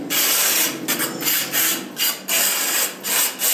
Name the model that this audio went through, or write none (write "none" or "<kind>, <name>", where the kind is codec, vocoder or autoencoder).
none